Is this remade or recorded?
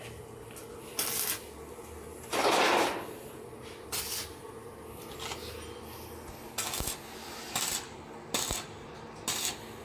recorded